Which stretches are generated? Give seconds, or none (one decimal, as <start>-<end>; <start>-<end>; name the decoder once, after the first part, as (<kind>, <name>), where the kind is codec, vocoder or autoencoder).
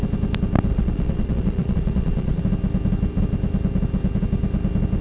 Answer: 0.7-2.4 (vocoder, Vocos)